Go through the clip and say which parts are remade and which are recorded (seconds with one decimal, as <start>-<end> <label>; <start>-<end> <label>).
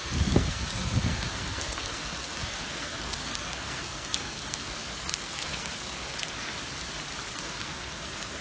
0.0-6.5 remade; 6.5-7.3 recorded; 7.3-8.4 remade